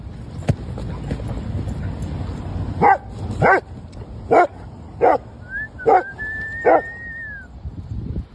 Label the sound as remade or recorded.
recorded